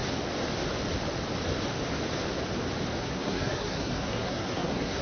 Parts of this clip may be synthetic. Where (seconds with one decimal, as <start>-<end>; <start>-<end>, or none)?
3.0-5.0